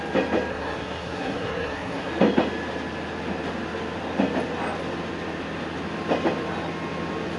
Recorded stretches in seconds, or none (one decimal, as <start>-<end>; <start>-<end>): 0.0-0.5; 2.1-7.4